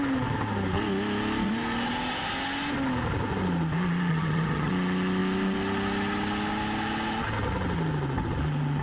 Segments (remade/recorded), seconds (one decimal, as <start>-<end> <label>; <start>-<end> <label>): 0.0-4.1 recorded; 4.1-4.7 remade; 4.7-8.8 recorded